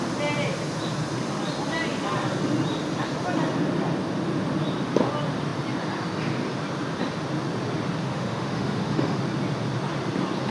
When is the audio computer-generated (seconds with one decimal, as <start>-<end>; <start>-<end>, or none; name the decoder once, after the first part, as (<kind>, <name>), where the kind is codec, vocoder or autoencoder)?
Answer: 8.0-9.2 (autoencoder, DAC-VAE)